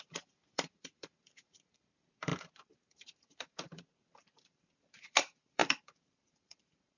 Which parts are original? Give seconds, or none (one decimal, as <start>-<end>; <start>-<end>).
none